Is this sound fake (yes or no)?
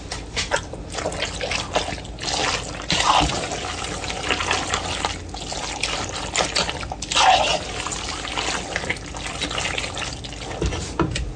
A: no